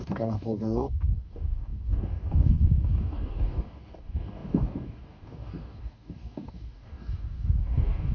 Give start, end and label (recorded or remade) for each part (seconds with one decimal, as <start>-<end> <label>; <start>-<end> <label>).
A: 0.0-8.1 remade